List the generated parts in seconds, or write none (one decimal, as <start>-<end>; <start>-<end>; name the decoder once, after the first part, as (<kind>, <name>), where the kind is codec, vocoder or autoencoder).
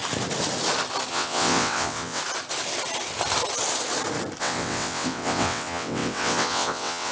1.1-2.2 (vocoder, WaveNeXt); 4.4-7.1